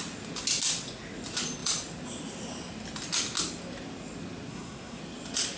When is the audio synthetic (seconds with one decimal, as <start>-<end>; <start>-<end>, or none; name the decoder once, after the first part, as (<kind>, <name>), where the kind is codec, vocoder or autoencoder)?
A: 4.5-5.0 (codec, SNAC)